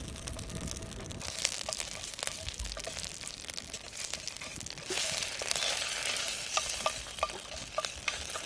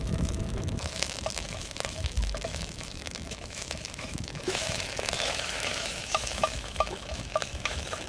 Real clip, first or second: first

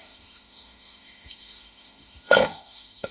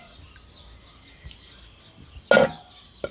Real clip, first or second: second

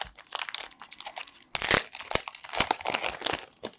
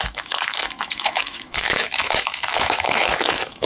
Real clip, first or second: first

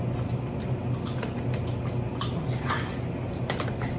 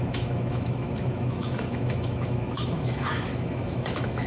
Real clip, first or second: first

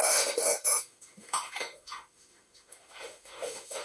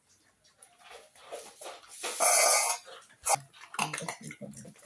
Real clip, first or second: second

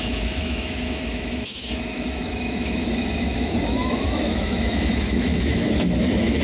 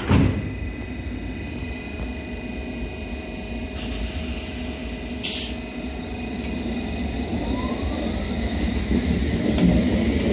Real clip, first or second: second